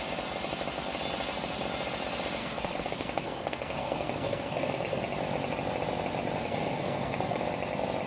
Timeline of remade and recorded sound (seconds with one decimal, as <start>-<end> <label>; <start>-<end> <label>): 0.0-2.4 recorded; 2.4-5.0 remade; 5.0-6.4 recorded; 6.4-7.4 remade; 7.4-8.1 recorded